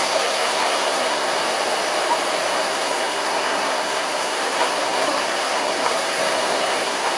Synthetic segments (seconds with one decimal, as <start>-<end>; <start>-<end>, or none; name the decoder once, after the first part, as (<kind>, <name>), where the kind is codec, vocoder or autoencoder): 0.0-1.4 (codec, SNAC); 2.6-7.2